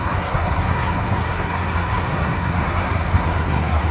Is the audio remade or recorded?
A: remade